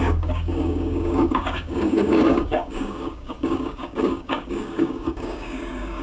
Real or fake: fake